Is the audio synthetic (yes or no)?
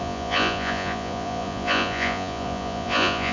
yes